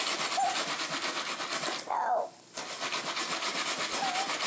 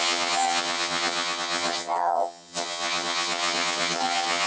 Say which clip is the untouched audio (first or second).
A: first